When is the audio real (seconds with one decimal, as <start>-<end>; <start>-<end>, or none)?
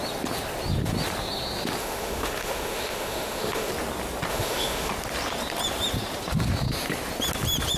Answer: 0.0-1.8; 3.7-4.3; 4.9-7.8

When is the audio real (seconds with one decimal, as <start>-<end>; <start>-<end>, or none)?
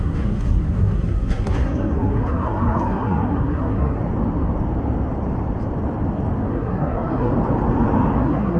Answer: 4.0-6.4; 7.3-8.2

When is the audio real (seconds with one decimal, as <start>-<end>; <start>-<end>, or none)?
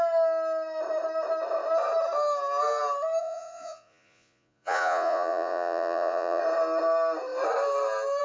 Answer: 0.0-3.2; 6.4-8.2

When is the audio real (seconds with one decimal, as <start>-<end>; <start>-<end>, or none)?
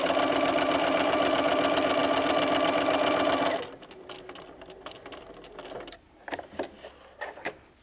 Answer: 0.0-7.8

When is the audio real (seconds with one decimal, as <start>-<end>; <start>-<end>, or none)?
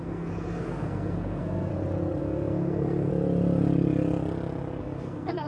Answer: 1.7-2.2; 3.1-4.8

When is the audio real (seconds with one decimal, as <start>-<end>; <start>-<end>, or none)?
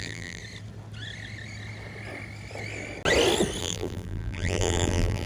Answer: 0.4-3.6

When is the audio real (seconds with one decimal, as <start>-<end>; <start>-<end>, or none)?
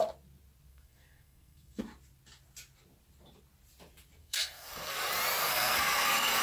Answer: 0.0-0.7; 1.8-4.2; 5.0-5.4